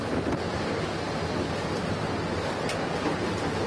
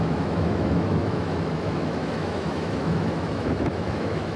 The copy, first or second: second